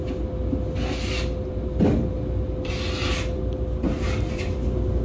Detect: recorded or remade recorded